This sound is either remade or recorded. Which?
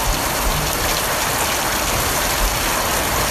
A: recorded